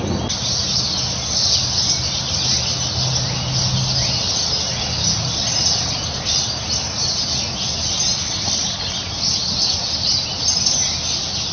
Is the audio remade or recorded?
recorded